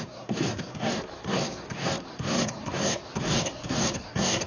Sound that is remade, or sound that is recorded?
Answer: remade